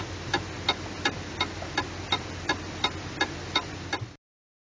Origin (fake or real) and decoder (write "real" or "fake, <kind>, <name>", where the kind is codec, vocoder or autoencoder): real